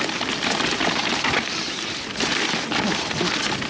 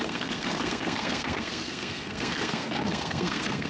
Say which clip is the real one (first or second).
first